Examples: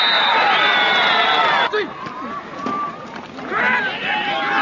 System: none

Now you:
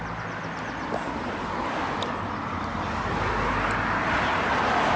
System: none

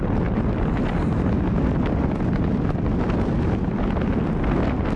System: none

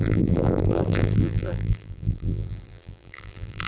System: vocoder, BigVGAN v2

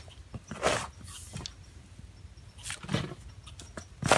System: none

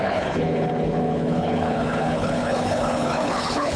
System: codec, HILCodec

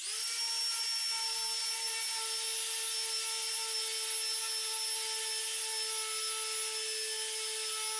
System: none